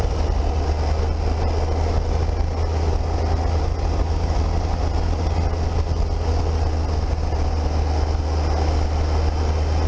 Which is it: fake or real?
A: real